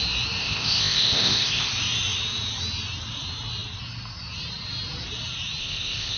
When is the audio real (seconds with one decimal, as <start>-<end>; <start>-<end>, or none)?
0.0-0.4; 1.7-5.6